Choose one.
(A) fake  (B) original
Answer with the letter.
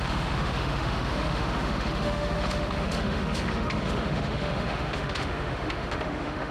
A